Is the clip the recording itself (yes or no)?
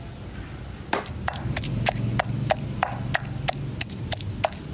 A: yes